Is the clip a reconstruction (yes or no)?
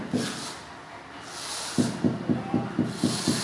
no